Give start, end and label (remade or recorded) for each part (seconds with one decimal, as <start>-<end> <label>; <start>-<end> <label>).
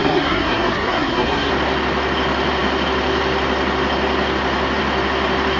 0.0-1.5 remade; 1.5-5.6 recorded